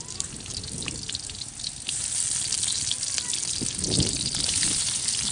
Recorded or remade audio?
recorded